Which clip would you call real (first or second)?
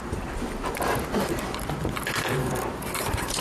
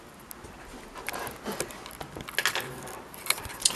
second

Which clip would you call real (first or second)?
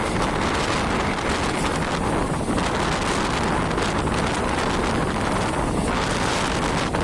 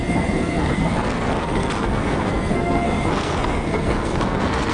first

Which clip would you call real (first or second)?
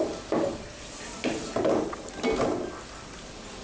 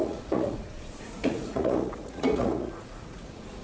first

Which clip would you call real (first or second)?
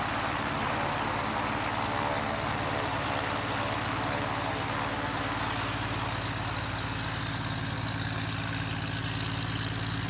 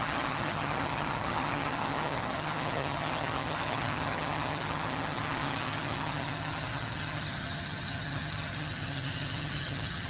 first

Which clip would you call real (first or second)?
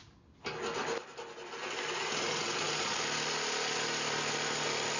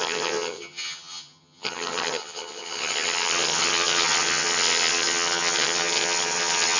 first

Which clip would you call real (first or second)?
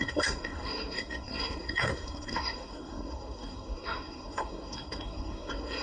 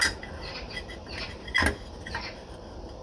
second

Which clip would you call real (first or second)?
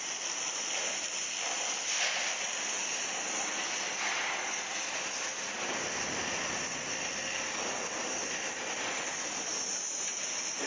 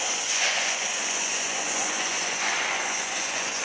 first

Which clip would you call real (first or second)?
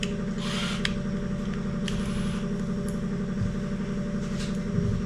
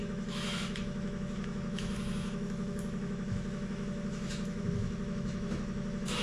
first